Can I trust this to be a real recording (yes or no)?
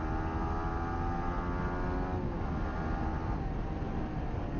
yes